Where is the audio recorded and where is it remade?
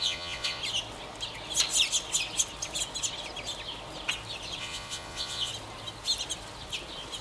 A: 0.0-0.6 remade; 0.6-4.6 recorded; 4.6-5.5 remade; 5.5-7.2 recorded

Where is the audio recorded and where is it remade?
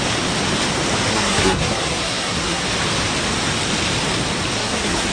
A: 0.0-1.1 recorded; 1.1-2.6 remade; 2.6-4.6 recorded; 4.6-5.1 remade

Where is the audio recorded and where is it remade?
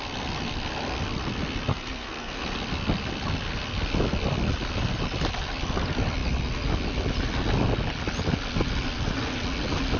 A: 0.0-1.7 recorded; 1.7-2.4 remade; 2.4-10.0 recorded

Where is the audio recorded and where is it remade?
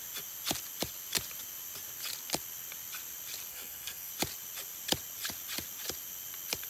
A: 0.0-3.5 recorded; 3.5-4.1 remade; 4.1-6.7 recorded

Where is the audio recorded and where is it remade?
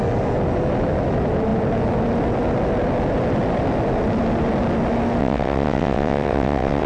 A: 0.0-5.2 recorded; 5.2-6.9 remade